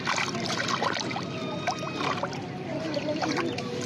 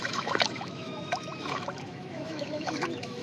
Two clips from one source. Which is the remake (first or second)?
second